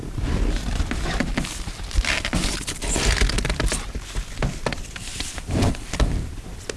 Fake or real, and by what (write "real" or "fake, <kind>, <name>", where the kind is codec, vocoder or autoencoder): real